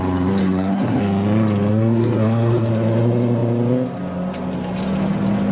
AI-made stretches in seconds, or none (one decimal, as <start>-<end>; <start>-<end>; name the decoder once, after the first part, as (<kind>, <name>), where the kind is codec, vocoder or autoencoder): 0.4-1.0 (codec, SNAC); 1.7-2.7